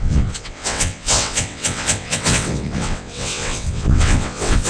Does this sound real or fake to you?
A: fake